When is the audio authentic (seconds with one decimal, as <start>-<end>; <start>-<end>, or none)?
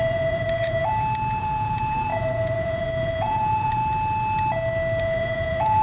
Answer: 0.8-1.4; 3.8-5.0